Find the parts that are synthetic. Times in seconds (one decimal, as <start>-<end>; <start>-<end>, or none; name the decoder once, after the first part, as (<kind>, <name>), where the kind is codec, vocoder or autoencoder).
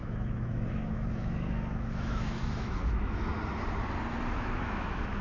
0.0-3.3 (autoencoder, DAC-VAE); 4.3-5.2